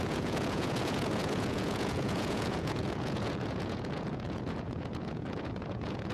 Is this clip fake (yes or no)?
yes